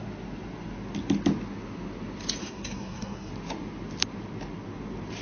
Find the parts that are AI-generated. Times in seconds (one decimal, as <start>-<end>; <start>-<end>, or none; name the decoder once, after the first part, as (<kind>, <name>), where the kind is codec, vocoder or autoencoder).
2.4-3.3 (codec, SNAC)